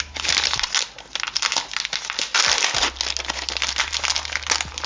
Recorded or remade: recorded